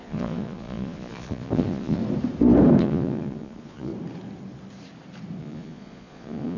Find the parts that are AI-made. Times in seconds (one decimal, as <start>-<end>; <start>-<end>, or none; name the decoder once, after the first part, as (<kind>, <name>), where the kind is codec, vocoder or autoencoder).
0.0-2.0 (vocoder, Vocos); 2.8-3.9; 5.4-6.6